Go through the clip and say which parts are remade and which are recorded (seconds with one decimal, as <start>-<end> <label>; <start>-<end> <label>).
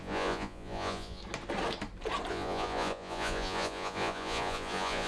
0.0-1.2 remade; 1.2-2.3 recorded; 2.3-5.1 remade